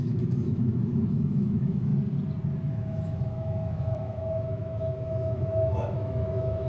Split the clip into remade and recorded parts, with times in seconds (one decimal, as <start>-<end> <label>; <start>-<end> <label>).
0.0-1.9 remade; 1.9-2.7 recorded; 2.7-6.7 remade